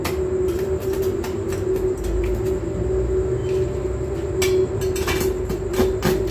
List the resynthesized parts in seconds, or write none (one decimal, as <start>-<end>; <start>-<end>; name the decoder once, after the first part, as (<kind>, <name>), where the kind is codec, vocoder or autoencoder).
none

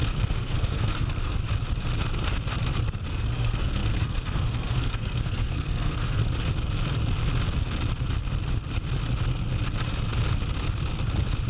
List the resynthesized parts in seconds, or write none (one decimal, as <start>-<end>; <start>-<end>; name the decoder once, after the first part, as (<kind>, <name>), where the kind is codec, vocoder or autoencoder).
0.0-1.4 (codec, SNAC); 2.9-6.2

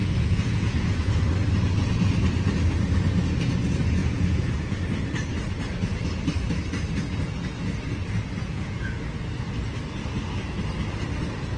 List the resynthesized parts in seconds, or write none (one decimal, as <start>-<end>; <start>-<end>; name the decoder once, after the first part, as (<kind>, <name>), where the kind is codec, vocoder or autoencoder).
0.0-1.2 (vocoder, Vocos); 4.0-4.8; 8.4-9.0

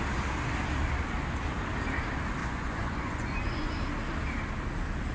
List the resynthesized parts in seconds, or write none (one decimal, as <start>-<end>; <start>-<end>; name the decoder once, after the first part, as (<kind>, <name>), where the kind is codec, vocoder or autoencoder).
2.4-3.7 (vocoder, Vocos)

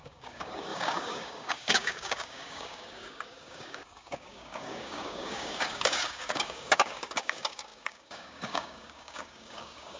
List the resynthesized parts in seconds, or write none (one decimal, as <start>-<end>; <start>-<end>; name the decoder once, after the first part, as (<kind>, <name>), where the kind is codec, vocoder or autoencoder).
0.0-10.0 (codec, DAC)

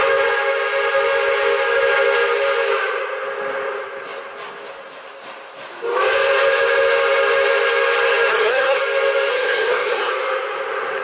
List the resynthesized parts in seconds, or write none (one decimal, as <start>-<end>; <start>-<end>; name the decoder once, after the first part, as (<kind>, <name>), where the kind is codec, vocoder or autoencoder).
8.3-8.8 (codec, SNAC); 9.3-10.1